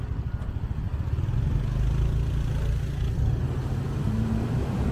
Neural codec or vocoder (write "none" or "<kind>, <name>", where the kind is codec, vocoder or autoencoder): none